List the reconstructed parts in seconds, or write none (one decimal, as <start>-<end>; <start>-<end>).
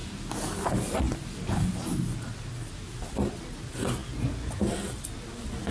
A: none